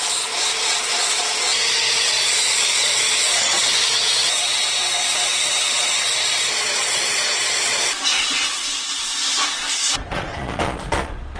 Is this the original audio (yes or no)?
no